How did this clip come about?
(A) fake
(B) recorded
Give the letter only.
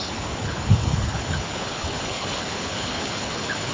A